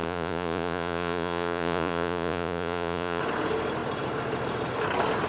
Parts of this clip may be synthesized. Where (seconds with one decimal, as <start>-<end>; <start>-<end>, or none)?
0.0-3.2